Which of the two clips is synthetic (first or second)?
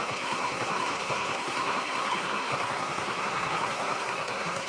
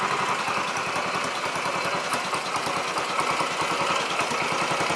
first